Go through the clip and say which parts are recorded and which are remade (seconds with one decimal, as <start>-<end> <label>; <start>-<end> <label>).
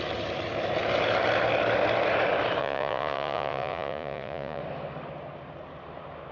0.0-2.6 recorded; 2.6-4.6 remade; 4.6-6.3 recorded